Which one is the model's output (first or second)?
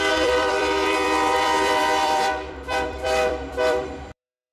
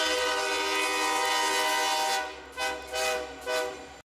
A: first